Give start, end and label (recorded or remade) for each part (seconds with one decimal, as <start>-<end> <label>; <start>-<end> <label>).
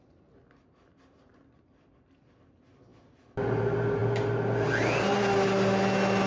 0.0-6.3 recorded